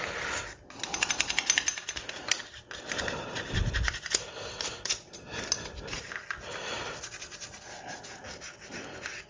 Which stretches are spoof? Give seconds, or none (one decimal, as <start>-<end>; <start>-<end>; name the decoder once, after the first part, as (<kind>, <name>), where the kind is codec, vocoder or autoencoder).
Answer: none